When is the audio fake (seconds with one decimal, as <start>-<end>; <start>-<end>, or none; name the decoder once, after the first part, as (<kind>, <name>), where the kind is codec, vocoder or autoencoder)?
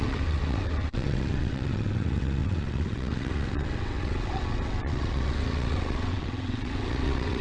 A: 0.0-7.4 (vocoder, WaveNeXt)